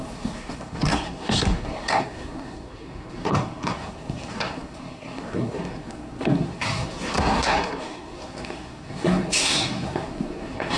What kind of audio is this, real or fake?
fake